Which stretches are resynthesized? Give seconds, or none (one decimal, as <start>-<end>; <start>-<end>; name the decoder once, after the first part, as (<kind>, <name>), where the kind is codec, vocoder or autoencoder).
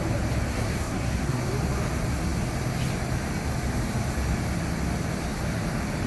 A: 0.5-1.4 (codec, SNAC)